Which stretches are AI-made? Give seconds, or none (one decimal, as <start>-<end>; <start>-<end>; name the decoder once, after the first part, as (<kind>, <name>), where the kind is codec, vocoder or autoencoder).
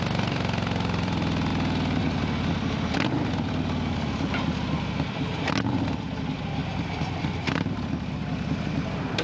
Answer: 0.0-9.2 (vocoder, BigVGAN v2)